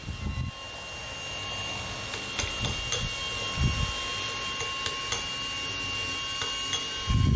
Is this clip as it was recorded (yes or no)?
yes